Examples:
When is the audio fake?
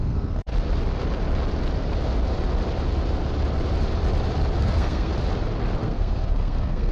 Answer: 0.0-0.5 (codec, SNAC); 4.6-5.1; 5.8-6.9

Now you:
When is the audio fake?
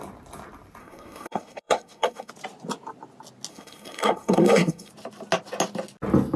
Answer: 0.8-2.3 (codec, SNAC); 3.5-4.9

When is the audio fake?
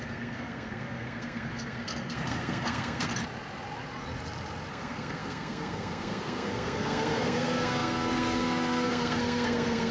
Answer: 0.0-3.1 (codec, SNAC); 4.7-9.9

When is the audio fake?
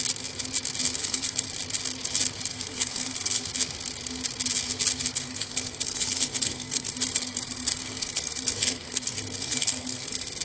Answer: 1.0-1.5 (codec, SNAC); 2.5-3.4; 5.2-10.4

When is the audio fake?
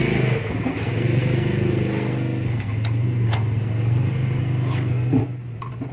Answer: 0.0-5.2 (codec, SNAC)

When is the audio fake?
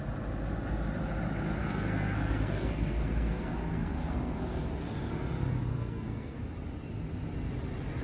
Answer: 1.6-4.7 (codec, SNAC); 5.7-6.4